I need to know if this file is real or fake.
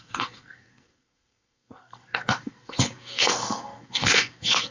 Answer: fake